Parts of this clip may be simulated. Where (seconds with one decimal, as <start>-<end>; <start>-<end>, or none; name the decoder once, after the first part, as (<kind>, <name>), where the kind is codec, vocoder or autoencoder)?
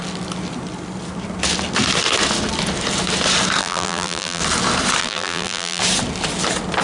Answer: 3.6-4.4 (vocoder, BigVGAN v2); 5.0-5.8